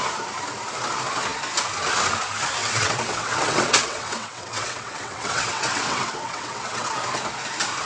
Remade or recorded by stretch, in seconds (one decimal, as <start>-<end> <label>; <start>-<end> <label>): 0.0-2.6 recorded; 2.6-6.9 remade; 6.9-7.9 recorded

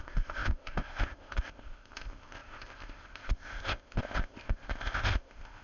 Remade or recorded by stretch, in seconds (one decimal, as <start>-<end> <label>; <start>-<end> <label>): 0.0-5.6 remade